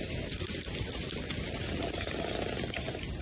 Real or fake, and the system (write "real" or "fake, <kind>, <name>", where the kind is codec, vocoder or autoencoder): real